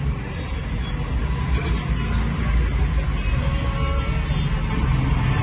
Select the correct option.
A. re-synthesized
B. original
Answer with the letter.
B